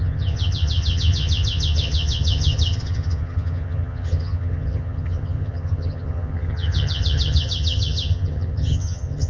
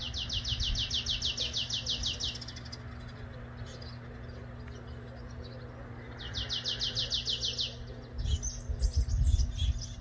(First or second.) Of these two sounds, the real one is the second